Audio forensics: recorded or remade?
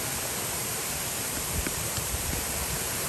remade